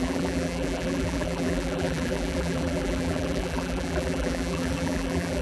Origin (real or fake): fake